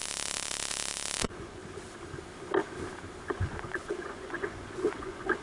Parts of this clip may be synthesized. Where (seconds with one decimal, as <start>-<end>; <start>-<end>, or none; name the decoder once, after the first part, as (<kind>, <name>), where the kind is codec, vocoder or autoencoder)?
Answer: 0.0-1.6 (vocoder, Vocos); 3.3-5.4